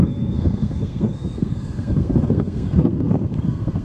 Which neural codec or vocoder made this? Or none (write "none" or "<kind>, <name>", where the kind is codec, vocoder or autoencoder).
codec, SNAC